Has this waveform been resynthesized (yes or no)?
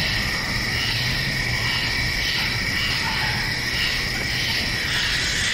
no